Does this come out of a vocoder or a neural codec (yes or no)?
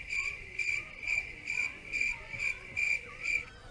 yes